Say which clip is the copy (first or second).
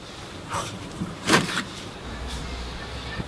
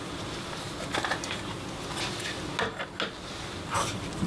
first